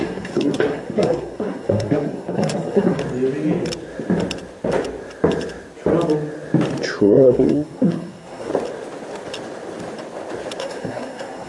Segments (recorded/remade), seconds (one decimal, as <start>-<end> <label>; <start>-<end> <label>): 0.0-3.0 remade; 3.0-7.0 recorded; 7.0-8.5 remade; 8.5-10.6 recorded; 10.6-11.5 remade